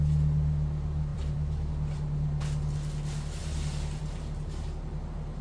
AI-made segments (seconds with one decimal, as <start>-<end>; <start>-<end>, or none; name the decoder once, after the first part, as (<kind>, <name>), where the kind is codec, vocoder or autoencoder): 1.1-1.7 (vocoder, BigVGAN v2)